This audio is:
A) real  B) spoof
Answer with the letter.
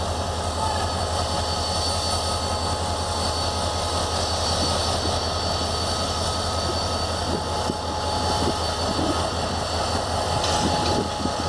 A